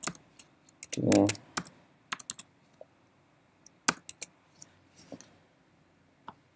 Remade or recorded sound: recorded